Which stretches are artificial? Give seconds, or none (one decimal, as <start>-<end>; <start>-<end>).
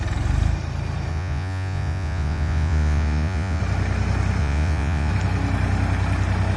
1.1-3.6; 4.4-5.1